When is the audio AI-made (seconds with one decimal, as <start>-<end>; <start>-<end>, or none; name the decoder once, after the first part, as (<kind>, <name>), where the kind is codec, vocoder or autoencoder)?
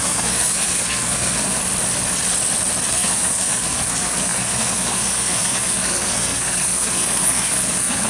0.0-1.6 (codec, SNAC); 2.9-8.1